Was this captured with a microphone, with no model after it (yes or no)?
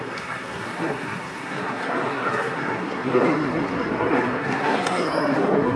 no